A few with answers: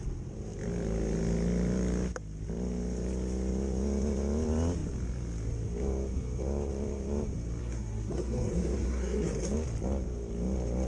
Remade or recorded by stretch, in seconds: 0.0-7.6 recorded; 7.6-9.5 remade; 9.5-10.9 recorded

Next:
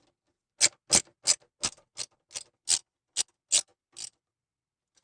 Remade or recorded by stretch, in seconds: 0.0-5.0 recorded

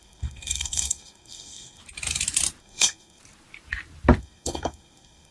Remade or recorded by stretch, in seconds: 0.0-1.8 remade; 1.8-2.6 recorded; 2.6-3.2 remade; 3.2-4.2 recorded; 4.2-5.3 remade

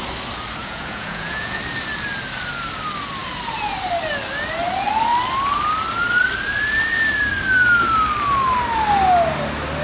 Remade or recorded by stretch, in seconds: 0.0-0.6 recorded; 0.6-1.6 remade; 1.6-9.8 recorded

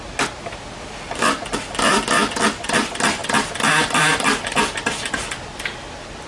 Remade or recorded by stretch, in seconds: 0.0-6.3 recorded